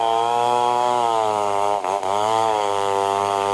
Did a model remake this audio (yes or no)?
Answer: yes